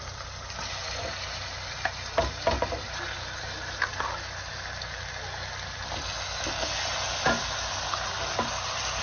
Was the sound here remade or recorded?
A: recorded